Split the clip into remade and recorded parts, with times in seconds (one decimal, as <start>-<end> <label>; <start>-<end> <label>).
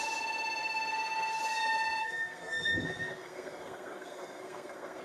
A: 0.0-0.6 recorded; 0.6-1.4 remade; 1.4-2.0 recorded; 2.0-5.0 remade